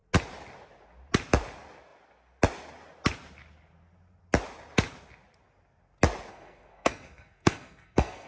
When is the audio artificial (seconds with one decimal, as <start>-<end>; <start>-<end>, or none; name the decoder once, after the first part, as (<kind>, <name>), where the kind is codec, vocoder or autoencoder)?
6.3-8.3 (codec, SNAC)